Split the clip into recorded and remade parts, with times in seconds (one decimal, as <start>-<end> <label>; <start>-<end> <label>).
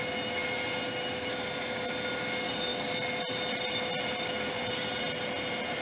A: 0.0-5.8 recorded